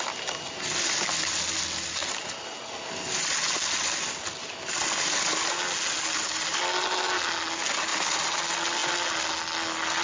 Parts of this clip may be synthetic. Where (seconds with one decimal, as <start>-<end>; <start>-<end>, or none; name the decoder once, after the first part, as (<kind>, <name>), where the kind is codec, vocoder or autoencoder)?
none